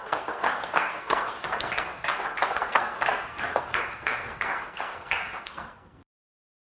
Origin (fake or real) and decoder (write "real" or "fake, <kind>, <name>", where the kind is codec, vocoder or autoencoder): fake, codec, SNAC